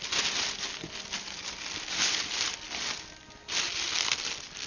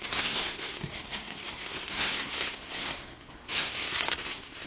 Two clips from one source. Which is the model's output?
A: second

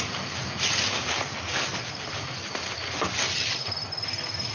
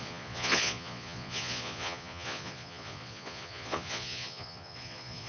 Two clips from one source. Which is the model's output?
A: second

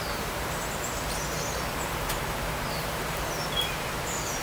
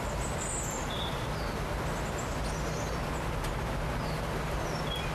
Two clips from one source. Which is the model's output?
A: first